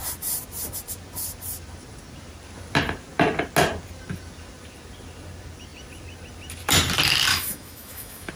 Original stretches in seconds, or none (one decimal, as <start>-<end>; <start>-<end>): 0.0-7.3